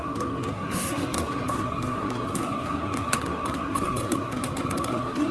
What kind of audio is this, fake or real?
fake